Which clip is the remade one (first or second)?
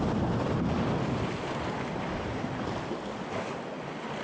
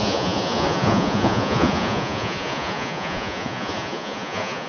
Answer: second